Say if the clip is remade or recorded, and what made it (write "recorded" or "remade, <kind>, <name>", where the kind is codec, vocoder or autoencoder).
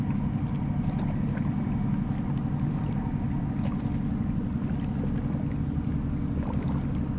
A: recorded